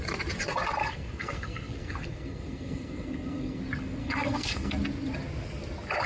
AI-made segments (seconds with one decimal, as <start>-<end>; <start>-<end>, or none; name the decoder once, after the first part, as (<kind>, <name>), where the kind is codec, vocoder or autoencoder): 0.8-3.6 (codec, SNAC); 4.0-4.7